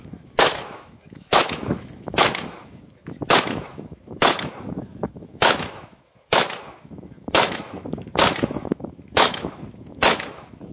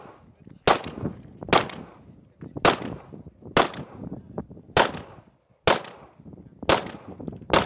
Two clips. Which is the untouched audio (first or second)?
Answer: second